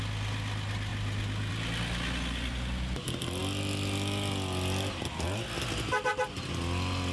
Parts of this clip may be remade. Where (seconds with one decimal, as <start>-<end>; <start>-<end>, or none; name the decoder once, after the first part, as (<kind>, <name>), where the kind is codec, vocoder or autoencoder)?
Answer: none